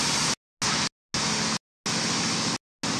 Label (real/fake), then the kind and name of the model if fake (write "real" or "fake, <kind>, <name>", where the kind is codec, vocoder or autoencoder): real